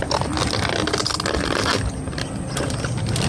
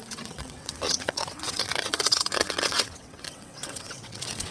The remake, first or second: second